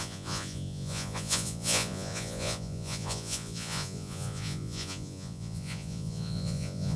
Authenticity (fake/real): fake